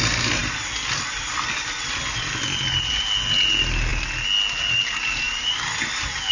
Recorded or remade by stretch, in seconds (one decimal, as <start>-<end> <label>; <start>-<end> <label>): 0.0-6.3 recorded